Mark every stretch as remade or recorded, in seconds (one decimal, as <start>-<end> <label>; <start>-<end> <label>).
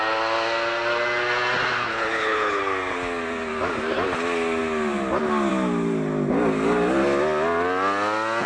0.0-1.9 recorded; 1.9-2.6 remade; 2.6-8.5 recorded